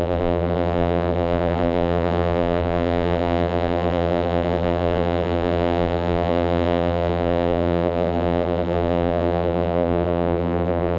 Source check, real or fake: fake